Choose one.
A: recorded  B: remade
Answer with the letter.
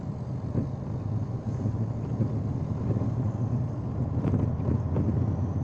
A